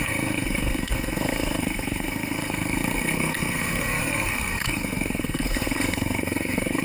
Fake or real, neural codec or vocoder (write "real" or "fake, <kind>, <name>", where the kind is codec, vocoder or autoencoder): fake, codec, SNAC